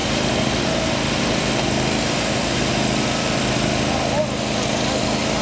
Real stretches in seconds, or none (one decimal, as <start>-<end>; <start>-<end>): 0.0-5.4